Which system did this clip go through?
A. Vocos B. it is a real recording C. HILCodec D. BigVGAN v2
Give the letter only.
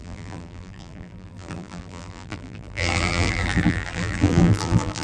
D